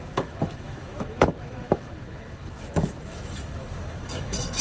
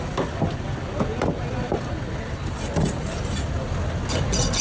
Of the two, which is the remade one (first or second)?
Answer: first